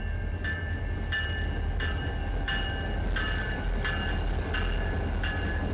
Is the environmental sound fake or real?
real